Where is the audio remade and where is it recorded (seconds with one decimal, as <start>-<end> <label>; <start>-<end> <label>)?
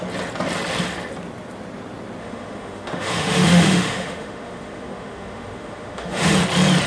0.0-2.2 recorded; 2.2-6.3 remade; 6.3-6.9 recorded